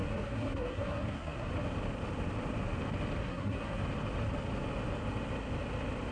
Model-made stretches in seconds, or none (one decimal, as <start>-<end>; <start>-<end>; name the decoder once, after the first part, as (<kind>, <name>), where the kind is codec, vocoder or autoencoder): 0.0-1.5 (codec, SNAC); 3.2-3.8